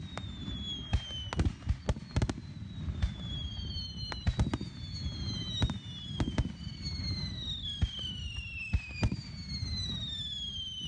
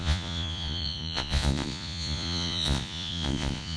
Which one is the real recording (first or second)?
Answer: first